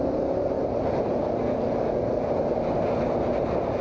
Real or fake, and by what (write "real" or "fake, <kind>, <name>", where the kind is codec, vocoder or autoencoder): real